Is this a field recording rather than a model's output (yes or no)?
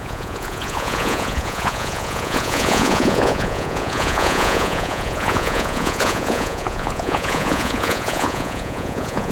no